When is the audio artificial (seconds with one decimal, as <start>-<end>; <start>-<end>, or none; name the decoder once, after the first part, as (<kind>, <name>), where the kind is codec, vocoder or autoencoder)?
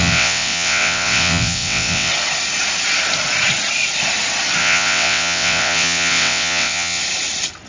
0.0-2.1 (vocoder, WaveNeXt); 4.6-7.0